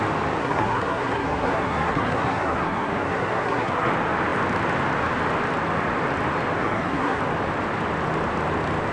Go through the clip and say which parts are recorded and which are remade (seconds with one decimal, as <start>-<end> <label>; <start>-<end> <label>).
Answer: 0.0-0.4 recorded; 0.4-3.9 remade; 3.9-6.6 recorded; 6.6-7.2 remade; 7.2-8.9 recorded